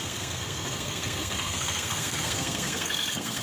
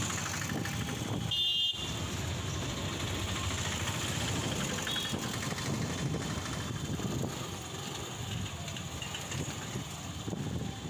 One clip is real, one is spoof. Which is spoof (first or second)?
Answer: first